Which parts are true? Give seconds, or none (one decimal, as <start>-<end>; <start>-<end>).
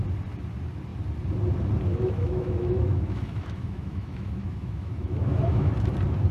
0.0-1.9; 5.7-6.3